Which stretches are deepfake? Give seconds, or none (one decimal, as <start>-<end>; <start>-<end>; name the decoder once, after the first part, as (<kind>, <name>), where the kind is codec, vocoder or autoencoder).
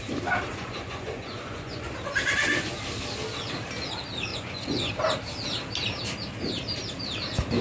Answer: 0.5-1.9 (vocoder, Vocos); 4.3-4.9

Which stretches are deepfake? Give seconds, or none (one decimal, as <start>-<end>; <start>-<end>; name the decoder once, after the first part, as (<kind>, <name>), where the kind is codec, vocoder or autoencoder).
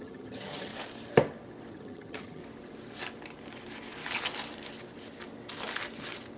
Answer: 0.0-0.7 (vocoder, HiFi-GAN); 1.7-2.4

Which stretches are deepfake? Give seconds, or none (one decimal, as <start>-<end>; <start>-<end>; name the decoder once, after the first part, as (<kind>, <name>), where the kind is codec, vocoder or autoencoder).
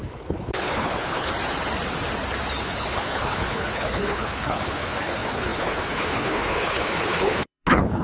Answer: 0.0-1.3 (codec, HILCodec); 2.6-8.0